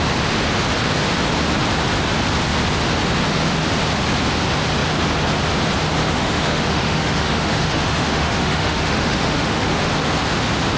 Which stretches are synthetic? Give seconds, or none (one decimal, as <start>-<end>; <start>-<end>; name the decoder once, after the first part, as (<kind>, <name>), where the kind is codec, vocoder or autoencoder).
6.0-9.9 (autoencoder, DAC-VAE)